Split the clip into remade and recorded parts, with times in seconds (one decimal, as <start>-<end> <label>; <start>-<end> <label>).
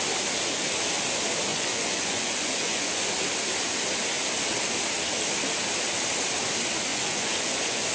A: 0.0-1.5 recorded; 1.5-3.1 remade; 3.1-6.9 recorded; 6.9-7.9 remade